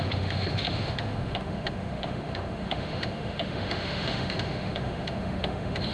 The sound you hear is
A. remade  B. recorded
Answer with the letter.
A